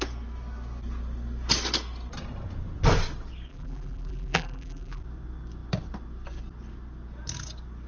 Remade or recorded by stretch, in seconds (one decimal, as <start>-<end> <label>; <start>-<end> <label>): 0.0-3.5 recorded; 3.5-5.0 remade; 5.0-7.9 recorded